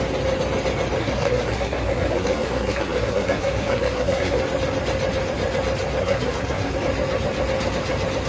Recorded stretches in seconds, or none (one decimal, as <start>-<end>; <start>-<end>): 0.0-1.0; 4.4-6.0; 6.7-8.3